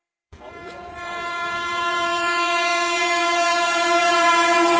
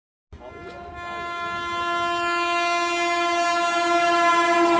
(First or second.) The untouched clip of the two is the second